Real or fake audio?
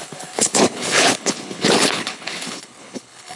fake